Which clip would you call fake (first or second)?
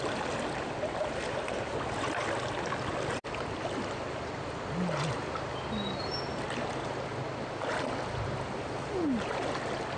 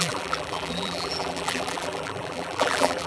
second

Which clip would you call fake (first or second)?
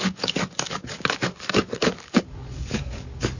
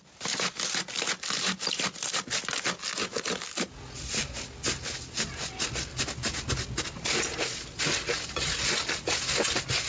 first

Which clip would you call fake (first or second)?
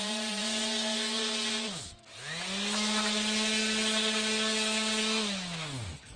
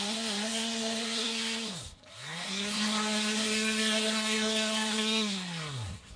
second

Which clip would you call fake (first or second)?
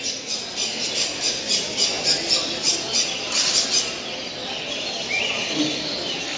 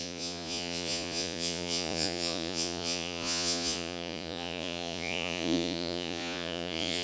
second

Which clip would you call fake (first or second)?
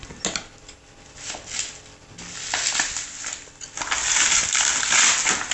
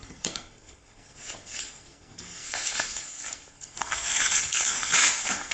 second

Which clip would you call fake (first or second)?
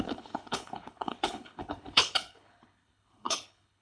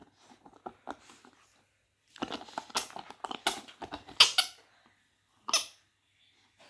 first